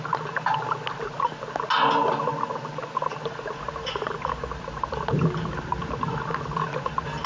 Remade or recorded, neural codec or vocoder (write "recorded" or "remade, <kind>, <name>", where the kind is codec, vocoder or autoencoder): recorded